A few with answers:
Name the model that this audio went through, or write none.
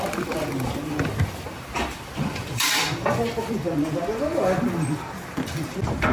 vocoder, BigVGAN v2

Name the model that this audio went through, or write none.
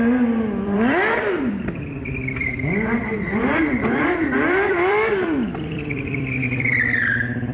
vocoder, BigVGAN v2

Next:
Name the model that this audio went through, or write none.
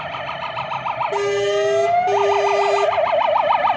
none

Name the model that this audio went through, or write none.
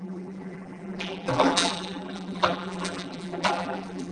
vocoder, BigVGAN v2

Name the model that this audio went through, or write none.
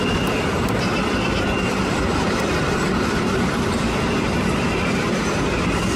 vocoder, BigVGAN v2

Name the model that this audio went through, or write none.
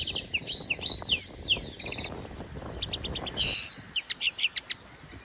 vocoder, BigVGAN v2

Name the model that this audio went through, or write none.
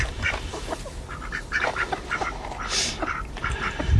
vocoder, BigVGAN v2